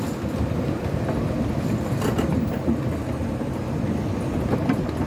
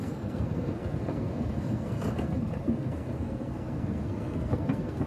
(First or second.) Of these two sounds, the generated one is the second